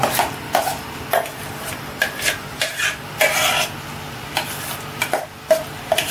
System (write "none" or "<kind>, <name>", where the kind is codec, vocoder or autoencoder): none